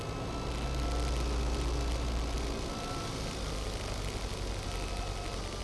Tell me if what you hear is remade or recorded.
recorded